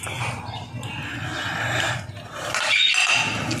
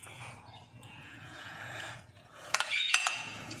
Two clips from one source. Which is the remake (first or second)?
second